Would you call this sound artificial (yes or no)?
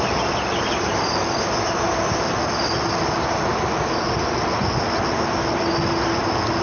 no